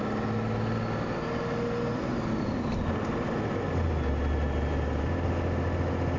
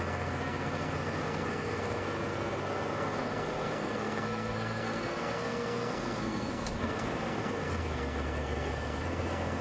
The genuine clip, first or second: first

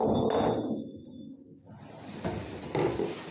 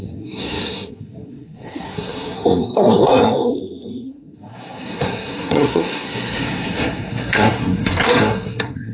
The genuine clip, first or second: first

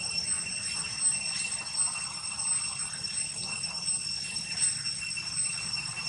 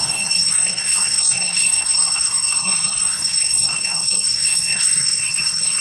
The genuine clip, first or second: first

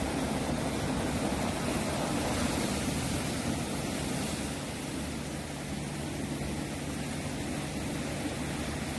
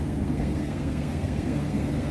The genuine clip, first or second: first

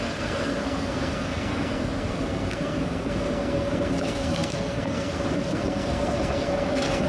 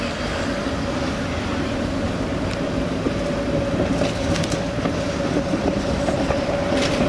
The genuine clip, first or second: second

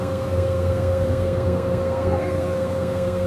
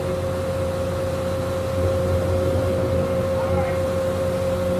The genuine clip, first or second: second